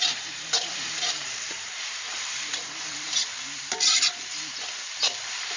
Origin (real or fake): fake